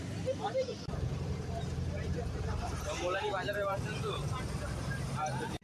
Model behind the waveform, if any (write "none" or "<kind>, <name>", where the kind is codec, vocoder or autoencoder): vocoder, BigVGAN v2